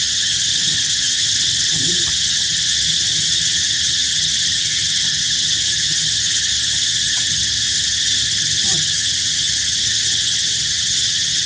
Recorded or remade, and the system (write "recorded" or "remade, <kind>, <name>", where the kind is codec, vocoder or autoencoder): remade, vocoder, HiFi-GAN